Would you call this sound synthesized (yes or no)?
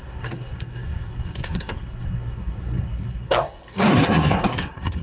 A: yes